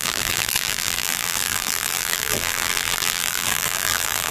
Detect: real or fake fake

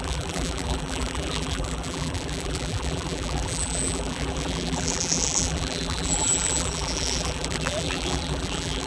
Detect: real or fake fake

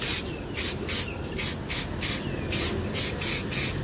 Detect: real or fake real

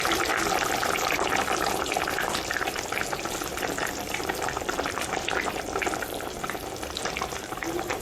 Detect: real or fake fake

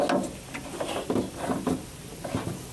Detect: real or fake real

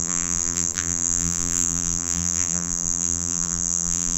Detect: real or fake fake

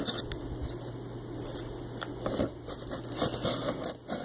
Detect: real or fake real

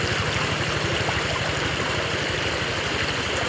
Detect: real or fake fake